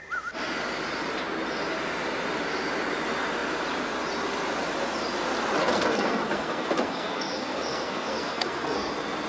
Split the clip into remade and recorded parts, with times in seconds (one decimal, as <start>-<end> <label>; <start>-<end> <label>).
0.0-5.6 recorded; 5.6-8.9 remade; 8.9-9.3 recorded

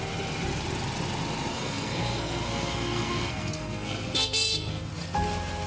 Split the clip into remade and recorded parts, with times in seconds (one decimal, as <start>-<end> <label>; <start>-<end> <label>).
0.0-1.5 recorded; 1.5-4.9 remade; 4.9-5.7 recorded